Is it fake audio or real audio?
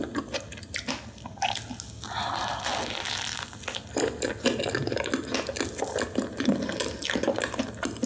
real